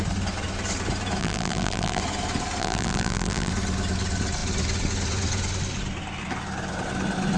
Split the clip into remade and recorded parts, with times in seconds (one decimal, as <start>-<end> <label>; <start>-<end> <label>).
0.0-1.2 recorded; 1.2-2.0 remade; 2.0-2.6 recorded; 2.6-3.5 remade; 3.5-7.4 recorded